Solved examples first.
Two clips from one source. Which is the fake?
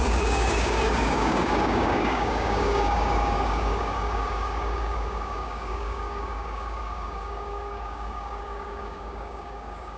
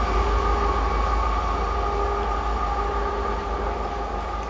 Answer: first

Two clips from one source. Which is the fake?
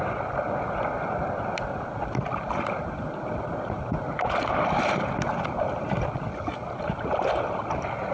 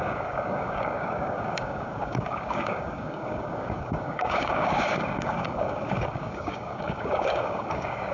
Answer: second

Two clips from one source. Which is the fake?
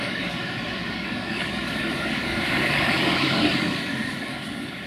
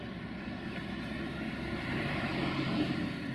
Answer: first